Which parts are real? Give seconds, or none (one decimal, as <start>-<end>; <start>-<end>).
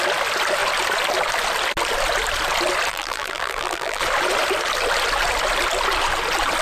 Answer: 0.0-2.9; 4.0-6.6